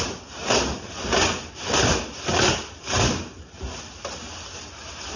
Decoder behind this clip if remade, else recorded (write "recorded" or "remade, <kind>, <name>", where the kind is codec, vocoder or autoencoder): recorded